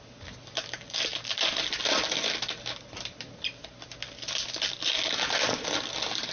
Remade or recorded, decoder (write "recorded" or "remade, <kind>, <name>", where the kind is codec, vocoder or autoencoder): recorded